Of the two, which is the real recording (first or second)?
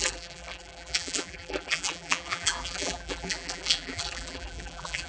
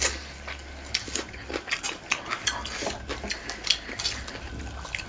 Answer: second